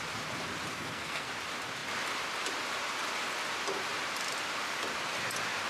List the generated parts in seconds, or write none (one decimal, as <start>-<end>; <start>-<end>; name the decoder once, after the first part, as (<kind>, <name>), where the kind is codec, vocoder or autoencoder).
0.7-1.3 (codec, SNAC)